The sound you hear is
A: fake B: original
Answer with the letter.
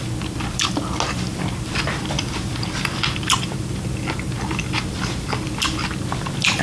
B